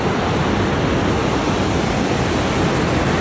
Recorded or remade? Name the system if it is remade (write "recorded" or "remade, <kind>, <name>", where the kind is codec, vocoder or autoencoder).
recorded